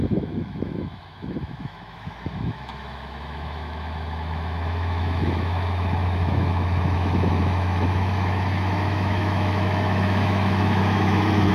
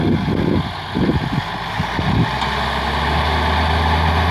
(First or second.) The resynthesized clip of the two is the first